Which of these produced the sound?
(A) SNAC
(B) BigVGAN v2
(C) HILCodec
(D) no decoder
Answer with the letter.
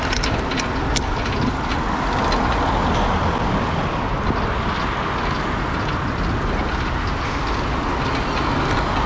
D